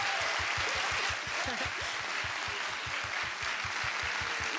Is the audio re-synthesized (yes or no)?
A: no